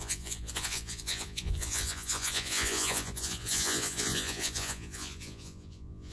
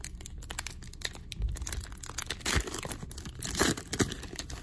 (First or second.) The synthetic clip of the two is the first